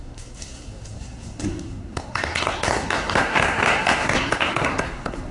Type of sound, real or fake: fake